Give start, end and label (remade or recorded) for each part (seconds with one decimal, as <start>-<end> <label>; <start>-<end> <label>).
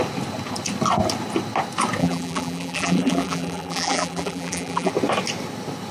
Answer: 0.0-2.0 recorded; 2.0-4.9 remade; 4.9-5.9 recorded